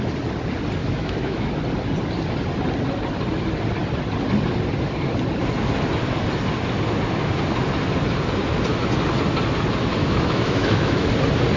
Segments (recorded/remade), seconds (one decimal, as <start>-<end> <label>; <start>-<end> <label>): 0.0-0.8 recorded; 0.8-1.5 remade; 1.5-10.0 recorded; 10.0-11.1 remade; 11.1-11.6 recorded